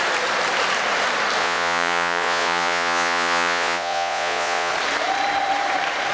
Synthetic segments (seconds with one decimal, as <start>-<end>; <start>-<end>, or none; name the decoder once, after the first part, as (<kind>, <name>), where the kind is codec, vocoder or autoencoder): 1.4-4.7 (vocoder, Vocos)